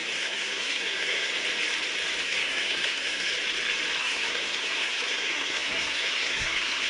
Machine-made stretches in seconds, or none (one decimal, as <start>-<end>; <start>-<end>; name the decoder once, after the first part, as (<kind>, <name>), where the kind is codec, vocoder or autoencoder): 0.0-1.3 (codec, SNAC); 2.2-3.3; 4.0-6.9